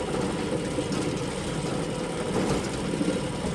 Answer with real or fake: real